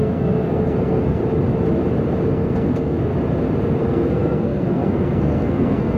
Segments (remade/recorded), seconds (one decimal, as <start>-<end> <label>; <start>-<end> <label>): 0.0-1.2 remade; 1.2-2.3 recorded; 2.3-3.1 remade; 3.1-3.8 recorded; 3.8-6.0 remade